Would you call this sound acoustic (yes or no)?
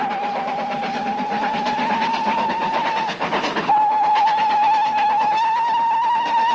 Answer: yes